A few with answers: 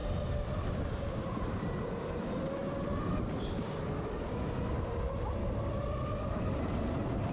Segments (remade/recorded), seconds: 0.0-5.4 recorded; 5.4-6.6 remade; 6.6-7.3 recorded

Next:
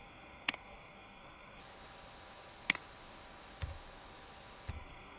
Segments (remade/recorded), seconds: 0.0-1.6 remade; 1.6-4.7 recorded; 4.7-5.2 remade